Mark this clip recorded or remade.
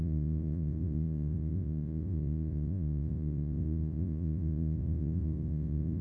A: remade